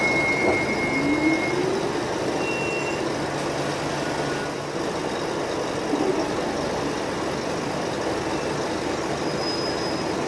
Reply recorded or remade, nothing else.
recorded